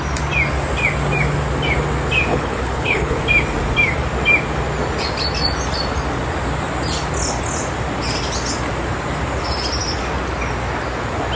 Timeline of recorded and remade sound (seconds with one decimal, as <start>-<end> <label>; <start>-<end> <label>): 0.0-2.3 recorded; 2.3-3.2 remade; 3.2-11.4 recorded